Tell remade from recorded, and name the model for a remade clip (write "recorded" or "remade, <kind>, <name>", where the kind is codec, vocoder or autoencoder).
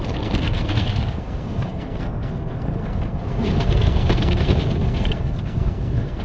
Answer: remade, codec, SNAC